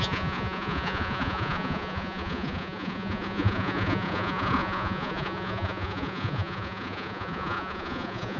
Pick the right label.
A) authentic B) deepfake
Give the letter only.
B